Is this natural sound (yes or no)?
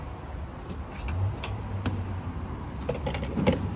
yes